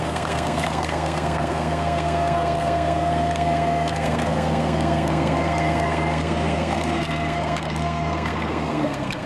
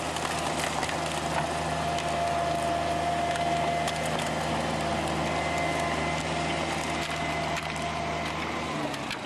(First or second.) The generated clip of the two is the first